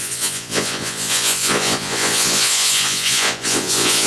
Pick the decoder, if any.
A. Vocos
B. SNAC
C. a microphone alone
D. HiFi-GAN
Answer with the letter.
A